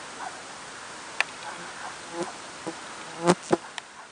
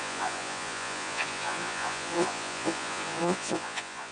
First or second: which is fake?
second